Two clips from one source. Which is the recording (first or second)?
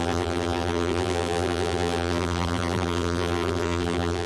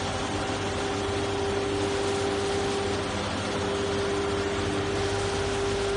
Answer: second